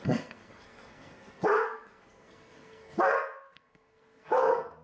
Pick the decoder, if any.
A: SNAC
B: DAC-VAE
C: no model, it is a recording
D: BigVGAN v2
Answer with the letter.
A